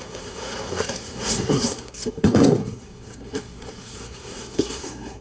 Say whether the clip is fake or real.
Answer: fake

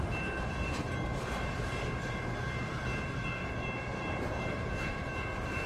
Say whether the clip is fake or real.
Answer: fake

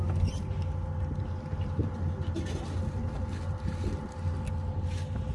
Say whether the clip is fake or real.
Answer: real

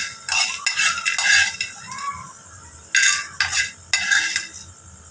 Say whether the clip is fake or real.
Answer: real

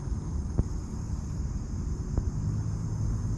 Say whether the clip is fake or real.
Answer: real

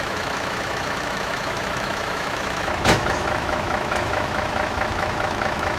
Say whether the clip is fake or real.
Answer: fake